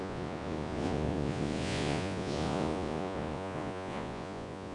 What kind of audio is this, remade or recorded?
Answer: remade